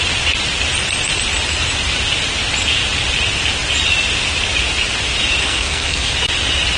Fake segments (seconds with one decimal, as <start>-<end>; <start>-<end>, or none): 5.4-6.1